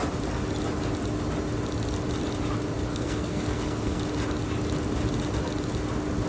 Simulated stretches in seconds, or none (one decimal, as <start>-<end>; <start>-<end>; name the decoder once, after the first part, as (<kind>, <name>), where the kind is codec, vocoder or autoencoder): 2.9-4.0 (codec, SNAC)